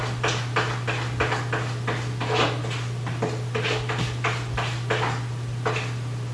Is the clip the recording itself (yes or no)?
yes